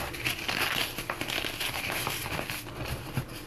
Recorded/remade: recorded